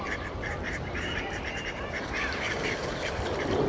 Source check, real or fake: fake